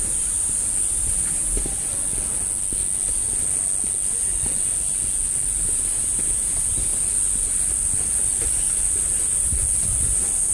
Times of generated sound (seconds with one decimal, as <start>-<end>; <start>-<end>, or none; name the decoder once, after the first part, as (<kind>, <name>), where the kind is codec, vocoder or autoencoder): none